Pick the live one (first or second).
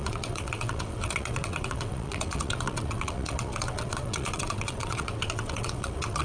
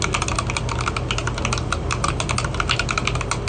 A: second